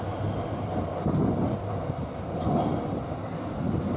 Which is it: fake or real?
real